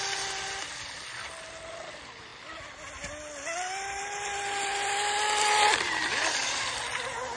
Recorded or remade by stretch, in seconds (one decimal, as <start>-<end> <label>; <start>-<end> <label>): 0.0-7.4 recorded